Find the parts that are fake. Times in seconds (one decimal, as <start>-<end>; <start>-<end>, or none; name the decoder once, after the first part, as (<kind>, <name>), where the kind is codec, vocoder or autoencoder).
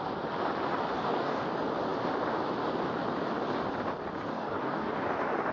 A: 0.9-1.4 (codec, DAC); 4.3-4.9